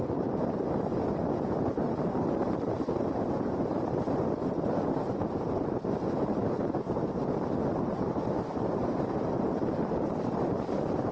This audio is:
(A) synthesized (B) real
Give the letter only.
A